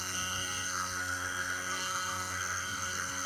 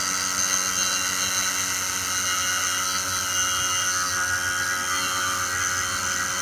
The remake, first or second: first